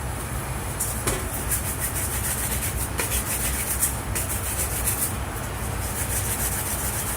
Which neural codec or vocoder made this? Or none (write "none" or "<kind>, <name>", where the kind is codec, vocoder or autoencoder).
none